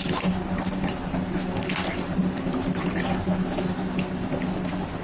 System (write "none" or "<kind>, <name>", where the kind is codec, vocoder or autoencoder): none